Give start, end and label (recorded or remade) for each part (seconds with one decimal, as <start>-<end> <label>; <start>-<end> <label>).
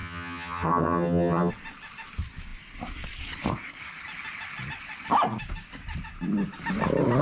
0.0-1.5 remade; 1.5-7.2 recorded